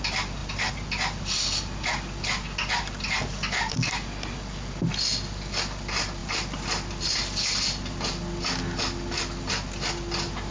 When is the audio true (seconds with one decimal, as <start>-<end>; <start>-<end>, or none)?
0.0-10.5